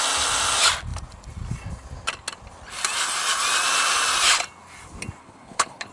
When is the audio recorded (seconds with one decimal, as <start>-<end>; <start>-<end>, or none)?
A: 0.0-5.2